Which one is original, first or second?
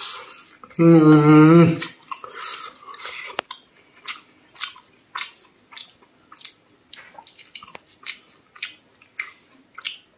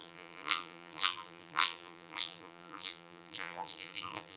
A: first